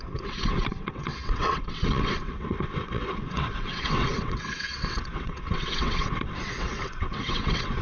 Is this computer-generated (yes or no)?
yes